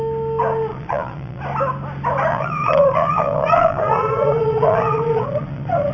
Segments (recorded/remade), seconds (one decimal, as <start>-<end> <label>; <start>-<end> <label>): 0.0-0.7 recorded; 0.7-1.4 remade; 1.4-2.3 recorded; 2.3-5.9 remade